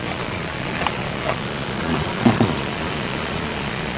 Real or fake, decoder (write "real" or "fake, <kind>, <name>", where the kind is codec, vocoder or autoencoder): fake, vocoder, Vocos